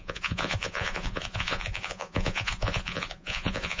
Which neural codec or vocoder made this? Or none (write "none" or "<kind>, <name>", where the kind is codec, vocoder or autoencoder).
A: vocoder, Vocos